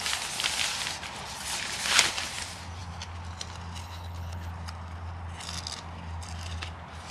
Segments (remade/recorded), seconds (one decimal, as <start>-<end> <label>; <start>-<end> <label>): 0.0-3.8 recorded; 3.8-4.5 remade; 4.5-7.1 recorded